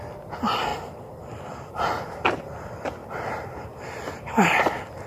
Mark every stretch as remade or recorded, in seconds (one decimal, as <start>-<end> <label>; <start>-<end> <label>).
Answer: 0.0-3.0 recorded; 3.0-4.2 remade; 4.2-5.1 recorded